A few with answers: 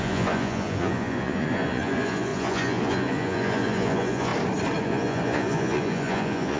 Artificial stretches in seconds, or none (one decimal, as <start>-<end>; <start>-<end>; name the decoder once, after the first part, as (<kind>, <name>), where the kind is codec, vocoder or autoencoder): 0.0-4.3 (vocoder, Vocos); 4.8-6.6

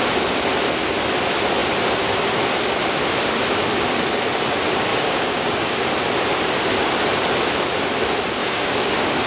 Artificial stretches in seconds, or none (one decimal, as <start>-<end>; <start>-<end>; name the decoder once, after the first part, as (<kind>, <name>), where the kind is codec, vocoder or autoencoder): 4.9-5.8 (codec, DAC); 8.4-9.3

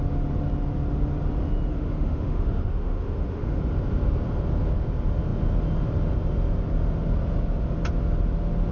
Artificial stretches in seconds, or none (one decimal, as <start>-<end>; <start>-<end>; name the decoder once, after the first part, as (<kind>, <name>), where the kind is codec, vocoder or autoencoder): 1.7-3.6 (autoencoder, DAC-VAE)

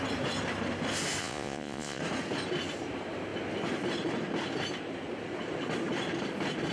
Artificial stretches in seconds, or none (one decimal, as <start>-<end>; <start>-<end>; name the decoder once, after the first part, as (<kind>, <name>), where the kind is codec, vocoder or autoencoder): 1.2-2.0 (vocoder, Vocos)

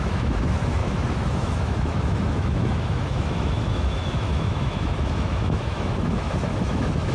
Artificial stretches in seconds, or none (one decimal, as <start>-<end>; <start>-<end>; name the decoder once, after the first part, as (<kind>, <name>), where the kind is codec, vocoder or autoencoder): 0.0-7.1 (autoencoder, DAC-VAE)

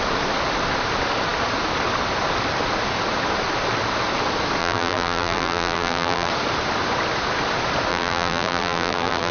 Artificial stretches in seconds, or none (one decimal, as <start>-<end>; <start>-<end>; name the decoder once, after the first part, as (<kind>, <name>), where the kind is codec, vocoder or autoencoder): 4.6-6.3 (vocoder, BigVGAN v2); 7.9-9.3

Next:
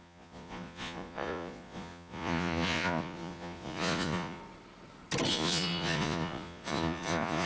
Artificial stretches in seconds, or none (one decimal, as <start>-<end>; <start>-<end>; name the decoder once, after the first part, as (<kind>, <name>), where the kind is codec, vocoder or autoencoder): 0.0-4.4 (vocoder, Vocos); 5.3-7.5

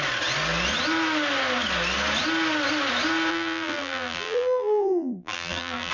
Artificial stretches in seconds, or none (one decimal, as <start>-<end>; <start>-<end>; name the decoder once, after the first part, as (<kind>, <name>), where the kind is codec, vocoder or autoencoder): 3.3-5.9 (vocoder, BigVGAN v2)